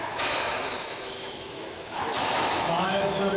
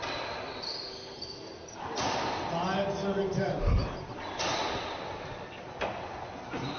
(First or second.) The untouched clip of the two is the second